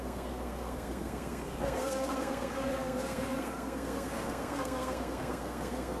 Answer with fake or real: fake